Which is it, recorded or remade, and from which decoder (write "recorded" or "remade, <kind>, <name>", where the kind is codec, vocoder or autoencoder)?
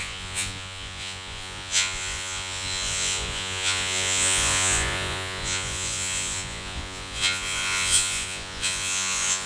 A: remade, vocoder, Vocos